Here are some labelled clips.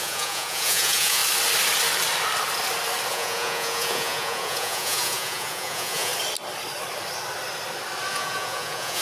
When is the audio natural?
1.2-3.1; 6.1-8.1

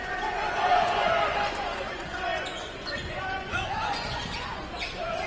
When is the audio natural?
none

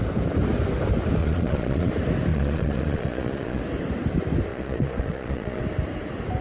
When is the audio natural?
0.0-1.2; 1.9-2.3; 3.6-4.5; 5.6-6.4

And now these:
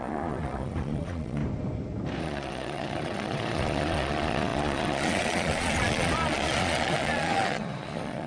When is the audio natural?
1.4-2.2